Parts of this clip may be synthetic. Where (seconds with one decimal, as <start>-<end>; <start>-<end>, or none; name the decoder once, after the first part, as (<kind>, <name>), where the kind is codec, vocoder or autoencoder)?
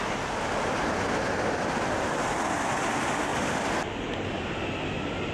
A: none